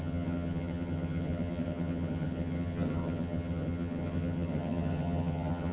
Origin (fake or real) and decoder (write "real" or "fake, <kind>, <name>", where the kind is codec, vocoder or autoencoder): fake, vocoder, HiFi-GAN